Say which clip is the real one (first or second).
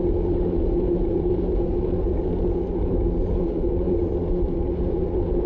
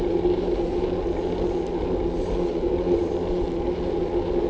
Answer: second